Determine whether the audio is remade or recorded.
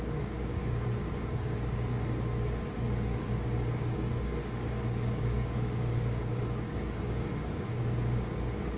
remade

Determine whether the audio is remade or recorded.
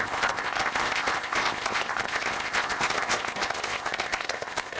remade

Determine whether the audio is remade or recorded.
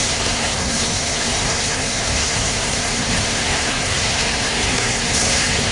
remade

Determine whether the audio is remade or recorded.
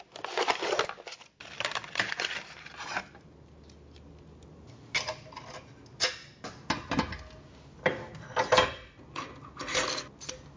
recorded